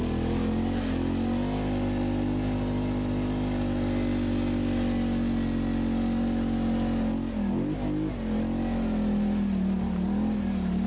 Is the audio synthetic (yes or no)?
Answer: no